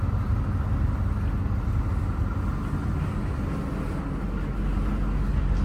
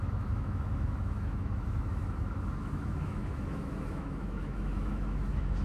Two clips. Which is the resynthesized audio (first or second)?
second